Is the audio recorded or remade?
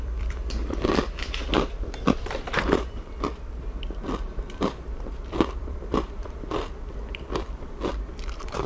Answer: remade